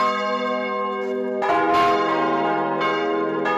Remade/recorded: recorded